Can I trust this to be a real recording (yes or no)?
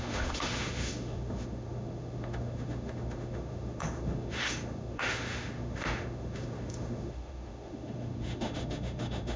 no